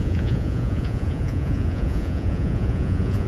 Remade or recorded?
remade